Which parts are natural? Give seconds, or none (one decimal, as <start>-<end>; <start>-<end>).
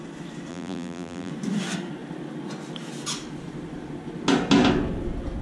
0.0-0.5; 1.3-5.4